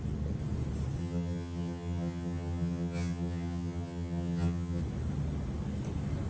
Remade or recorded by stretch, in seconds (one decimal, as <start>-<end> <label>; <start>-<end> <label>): 0.0-1.0 recorded; 1.0-4.8 remade; 4.8-6.3 recorded